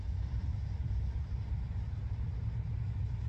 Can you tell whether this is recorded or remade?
recorded